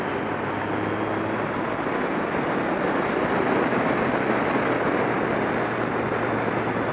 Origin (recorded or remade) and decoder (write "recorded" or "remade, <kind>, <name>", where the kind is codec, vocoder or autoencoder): recorded